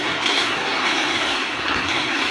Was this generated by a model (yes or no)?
yes